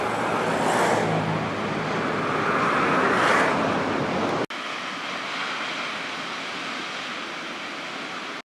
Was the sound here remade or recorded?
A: recorded